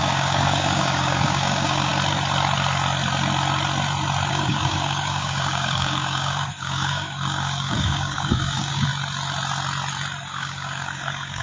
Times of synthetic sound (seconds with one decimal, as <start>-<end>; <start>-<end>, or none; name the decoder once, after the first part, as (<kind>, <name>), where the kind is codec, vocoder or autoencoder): 0.0-1.9 (codec, DAC); 4.3-8.9; 10.2-11.4